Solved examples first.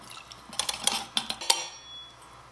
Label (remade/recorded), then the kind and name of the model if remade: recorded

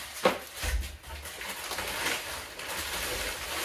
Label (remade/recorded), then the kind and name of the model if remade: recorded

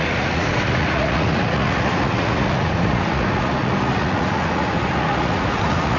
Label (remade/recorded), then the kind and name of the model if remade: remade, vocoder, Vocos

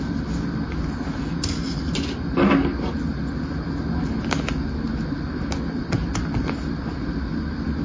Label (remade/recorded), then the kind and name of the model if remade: recorded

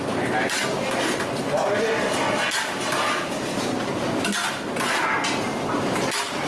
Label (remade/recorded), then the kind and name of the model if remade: recorded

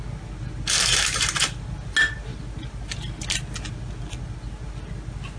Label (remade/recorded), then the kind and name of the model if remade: recorded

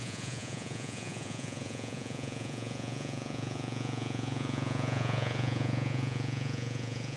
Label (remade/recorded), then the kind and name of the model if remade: remade, vocoder, Vocos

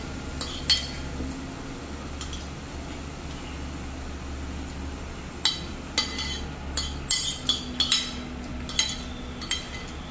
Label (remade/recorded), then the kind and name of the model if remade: recorded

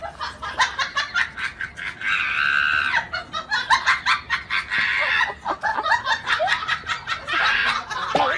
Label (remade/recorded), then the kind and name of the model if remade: recorded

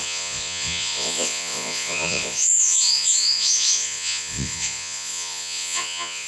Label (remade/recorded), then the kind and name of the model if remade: remade, vocoder, Vocos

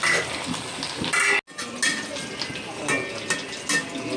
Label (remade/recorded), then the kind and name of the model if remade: recorded